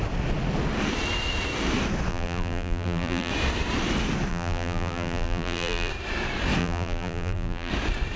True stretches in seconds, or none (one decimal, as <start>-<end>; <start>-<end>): 0.0-2.1; 3.3-4.3; 5.9-6.6; 7.7-8.2